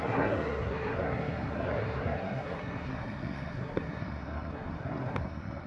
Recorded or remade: remade